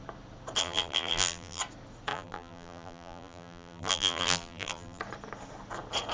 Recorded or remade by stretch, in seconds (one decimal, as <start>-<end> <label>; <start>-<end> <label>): 0.0-0.6 recorded; 0.6-1.6 remade; 1.6-2.1 recorded; 2.1-5.0 remade; 5.0-6.1 recorded